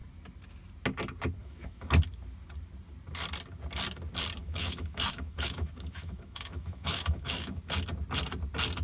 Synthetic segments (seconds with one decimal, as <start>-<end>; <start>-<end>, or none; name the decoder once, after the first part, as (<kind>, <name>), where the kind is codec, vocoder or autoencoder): 1.4-1.9 (autoencoder, DAC-VAE); 4.4-7.6